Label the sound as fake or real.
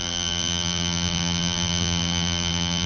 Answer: fake